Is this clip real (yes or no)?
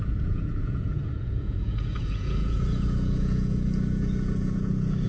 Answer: no